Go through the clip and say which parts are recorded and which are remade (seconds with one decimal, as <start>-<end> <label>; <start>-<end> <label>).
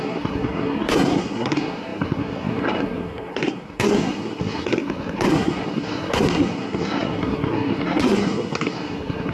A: 0.0-9.3 remade